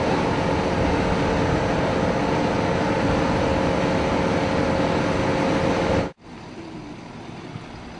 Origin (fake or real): real